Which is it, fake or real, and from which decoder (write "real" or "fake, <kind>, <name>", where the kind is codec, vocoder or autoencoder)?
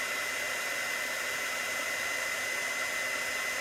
real